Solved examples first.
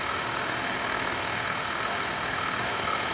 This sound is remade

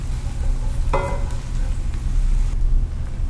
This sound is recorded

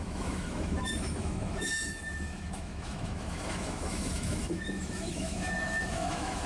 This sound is remade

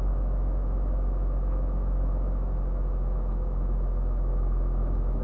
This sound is remade